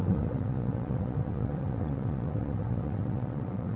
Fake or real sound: fake